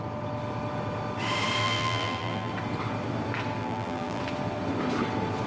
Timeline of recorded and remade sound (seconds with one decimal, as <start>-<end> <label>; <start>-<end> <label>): 0.0-1.6 recorded; 1.6-2.5 remade; 2.5-3.6 recorded; 3.6-4.2 remade; 4.2-5.5 recorded